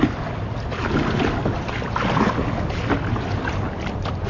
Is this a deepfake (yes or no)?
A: no